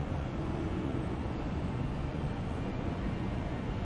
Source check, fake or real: fake